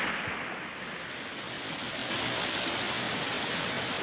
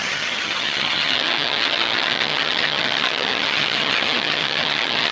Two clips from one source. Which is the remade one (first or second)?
second